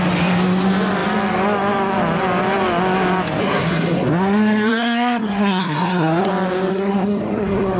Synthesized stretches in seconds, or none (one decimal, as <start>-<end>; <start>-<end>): 3.4-6.3; 6.7-7.8